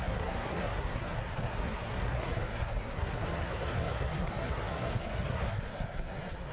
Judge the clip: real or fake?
fake